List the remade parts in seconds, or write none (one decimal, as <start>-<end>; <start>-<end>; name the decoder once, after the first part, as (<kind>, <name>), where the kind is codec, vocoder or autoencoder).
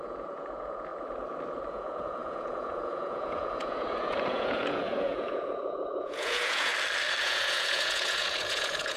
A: 0.0-0.9 (vocoder, Vocos); 1.7-6.7; 7.2-9.0